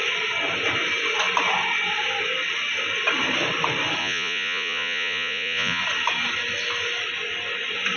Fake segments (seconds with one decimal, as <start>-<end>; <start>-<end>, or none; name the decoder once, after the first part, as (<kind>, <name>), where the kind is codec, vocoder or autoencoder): 4.0-5.8 (vocoder, Vocos)